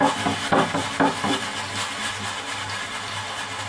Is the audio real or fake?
real